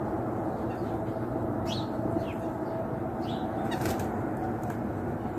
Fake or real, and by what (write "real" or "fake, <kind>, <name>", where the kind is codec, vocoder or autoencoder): real